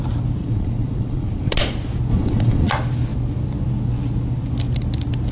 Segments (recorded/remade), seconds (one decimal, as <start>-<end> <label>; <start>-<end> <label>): 0.0-0.4 recorded; 0.4-1.5 remade; 1.5-2.1 recorded; 2.1-2.7 remade; 2.7-5.3 recorded